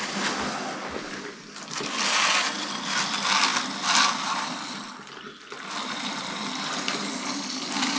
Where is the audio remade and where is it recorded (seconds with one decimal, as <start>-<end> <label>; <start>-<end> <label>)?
0.0-8.0 recorded